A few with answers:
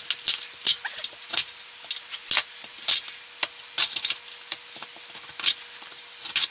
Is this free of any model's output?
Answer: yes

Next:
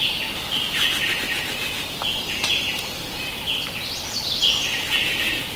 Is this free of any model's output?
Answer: yes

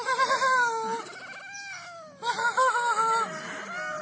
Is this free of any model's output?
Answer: yes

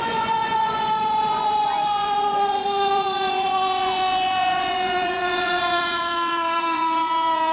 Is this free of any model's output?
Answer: no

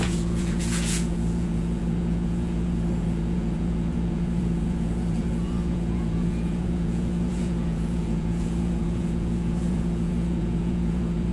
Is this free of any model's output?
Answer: no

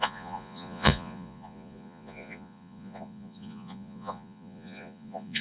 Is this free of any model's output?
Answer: no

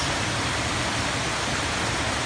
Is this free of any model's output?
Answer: yes